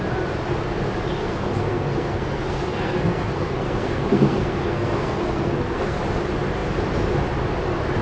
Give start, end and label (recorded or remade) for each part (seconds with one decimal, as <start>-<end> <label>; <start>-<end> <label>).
0.0-1.2 recorded; 1.2-6.0 remade; 6.0-8.0 recorded